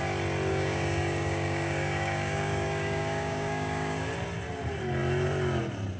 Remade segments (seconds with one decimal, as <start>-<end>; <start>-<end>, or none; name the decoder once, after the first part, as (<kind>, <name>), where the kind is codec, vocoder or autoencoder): 0.5-4.1 (codec, DAC)